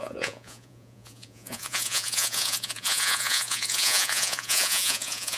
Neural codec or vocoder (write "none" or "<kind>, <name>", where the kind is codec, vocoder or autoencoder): vocoder, Vocos